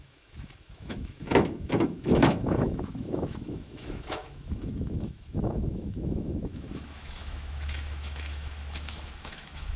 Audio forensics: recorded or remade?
remade